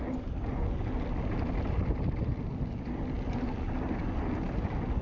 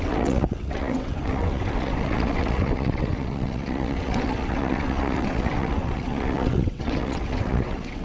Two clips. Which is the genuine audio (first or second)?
first